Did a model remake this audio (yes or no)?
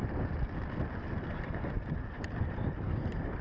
no